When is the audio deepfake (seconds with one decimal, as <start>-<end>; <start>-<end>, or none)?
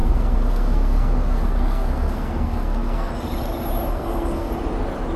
0.0-3.1; 3.9-4.5